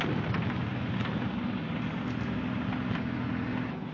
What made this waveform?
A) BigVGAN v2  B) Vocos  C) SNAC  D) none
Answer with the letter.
D